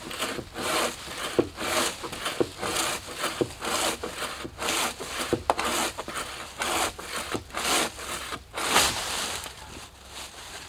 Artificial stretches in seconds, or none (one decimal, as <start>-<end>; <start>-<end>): 8.3-10.0